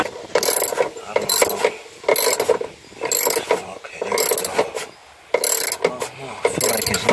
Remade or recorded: recorded